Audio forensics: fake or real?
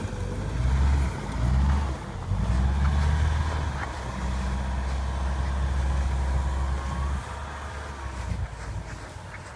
real